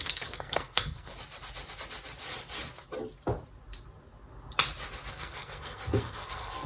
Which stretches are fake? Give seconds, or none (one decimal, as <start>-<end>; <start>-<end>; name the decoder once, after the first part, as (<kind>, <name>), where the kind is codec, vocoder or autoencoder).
0.0-1.1 (codec, SNAC); 5.1-6.7